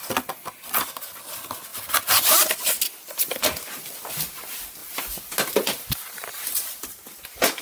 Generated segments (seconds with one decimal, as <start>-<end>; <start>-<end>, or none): 1.7-2.3